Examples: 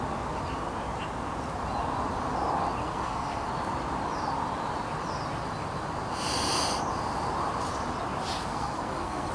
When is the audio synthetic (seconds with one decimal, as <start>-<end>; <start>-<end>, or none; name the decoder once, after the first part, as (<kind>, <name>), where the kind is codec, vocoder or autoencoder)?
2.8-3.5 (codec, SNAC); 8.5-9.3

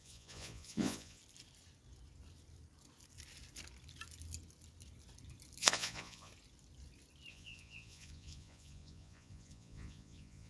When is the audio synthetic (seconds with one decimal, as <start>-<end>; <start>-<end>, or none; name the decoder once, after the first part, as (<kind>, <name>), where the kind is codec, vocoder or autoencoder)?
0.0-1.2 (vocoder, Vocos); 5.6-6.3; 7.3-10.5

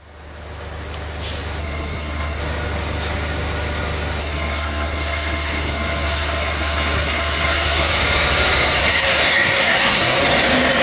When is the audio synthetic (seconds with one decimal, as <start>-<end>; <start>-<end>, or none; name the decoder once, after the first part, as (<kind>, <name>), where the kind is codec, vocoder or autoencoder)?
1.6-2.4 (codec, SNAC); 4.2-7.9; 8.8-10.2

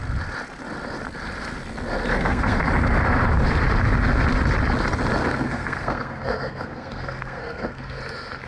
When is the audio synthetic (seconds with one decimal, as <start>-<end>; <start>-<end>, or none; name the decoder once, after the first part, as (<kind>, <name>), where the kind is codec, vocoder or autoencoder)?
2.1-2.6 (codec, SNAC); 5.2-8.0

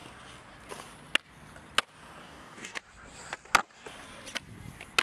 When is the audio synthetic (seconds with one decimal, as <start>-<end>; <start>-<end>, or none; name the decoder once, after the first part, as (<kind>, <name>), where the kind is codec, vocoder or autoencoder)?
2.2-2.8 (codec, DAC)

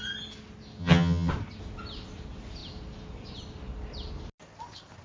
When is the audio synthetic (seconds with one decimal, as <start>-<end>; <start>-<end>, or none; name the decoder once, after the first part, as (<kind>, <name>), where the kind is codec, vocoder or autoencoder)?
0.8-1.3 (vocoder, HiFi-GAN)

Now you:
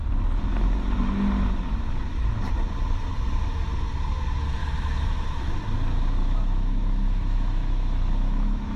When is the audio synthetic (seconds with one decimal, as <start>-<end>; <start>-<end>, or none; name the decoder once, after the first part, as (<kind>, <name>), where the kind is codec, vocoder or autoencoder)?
4.6-5.6 (autoencoder, DAC-VAE); 6.2-8.8

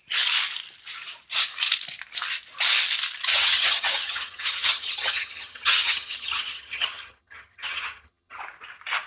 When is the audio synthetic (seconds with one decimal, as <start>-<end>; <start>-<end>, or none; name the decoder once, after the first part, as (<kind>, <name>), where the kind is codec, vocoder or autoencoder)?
3.3-8.4 (vocoder, HiFi-GAN)